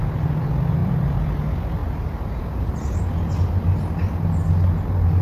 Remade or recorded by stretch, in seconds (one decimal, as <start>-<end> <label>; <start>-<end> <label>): 0.0-0.8 recorded; 0.8-1.3 remade; 1.3-1.8 recorded; 1.8-2.4 remade; 2.4-5.2 recorded